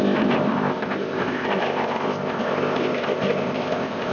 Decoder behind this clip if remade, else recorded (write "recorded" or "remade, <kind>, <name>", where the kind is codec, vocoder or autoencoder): remade, codec, ZipCodec